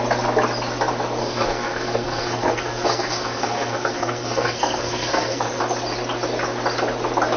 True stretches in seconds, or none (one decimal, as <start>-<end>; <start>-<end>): 0.0-1.2; 5.6-7.4